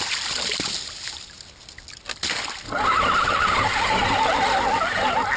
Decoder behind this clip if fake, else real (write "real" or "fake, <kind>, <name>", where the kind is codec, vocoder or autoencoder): real